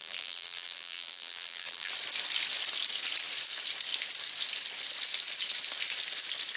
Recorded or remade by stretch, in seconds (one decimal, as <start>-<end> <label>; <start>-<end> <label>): 0.0-1.9 remade; 1.9-6.6 recorded